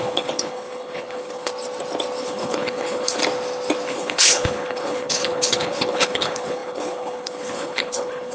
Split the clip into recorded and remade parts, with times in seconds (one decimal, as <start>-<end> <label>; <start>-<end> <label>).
0.0-1.5 remade; 1.5-2.2 recorded; 2.2-3.2 remade; 3.2-3.9 recorded; 3.9-8.3 remade